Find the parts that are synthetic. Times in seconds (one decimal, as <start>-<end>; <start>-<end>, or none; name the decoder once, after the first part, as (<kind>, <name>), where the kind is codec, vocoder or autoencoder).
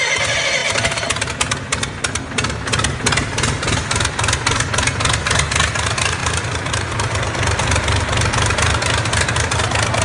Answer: 0.6-1.3 (vocoder, BigVGAN v2); 6.2-9.6